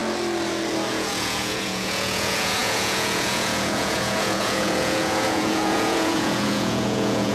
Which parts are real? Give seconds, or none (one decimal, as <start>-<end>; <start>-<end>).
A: 0.0-0.9